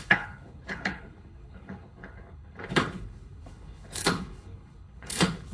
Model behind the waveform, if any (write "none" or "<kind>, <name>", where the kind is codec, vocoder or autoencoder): codec, HILCodec